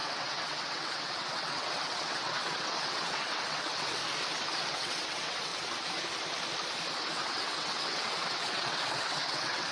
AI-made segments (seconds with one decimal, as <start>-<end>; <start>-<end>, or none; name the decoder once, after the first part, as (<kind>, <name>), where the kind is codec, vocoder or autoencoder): 0.0-4.0 (vocoder, WaveNeXt); 4.7-5.5; 7.1-9.7